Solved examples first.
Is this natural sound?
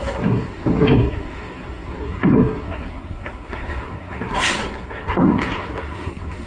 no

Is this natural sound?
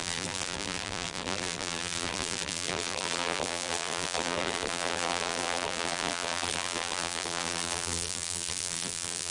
no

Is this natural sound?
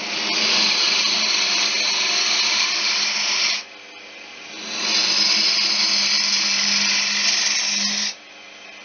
yes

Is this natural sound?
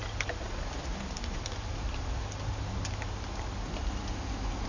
yes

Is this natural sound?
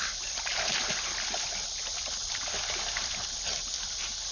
yes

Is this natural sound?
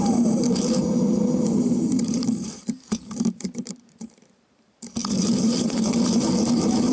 no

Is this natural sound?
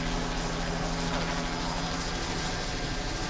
yes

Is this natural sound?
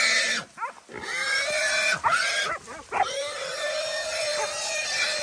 yes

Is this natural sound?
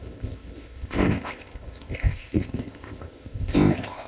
no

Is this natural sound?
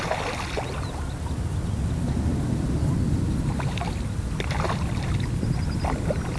yes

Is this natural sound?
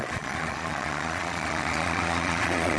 no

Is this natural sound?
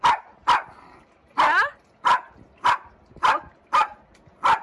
yes